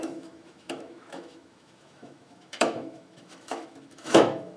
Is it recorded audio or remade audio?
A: remade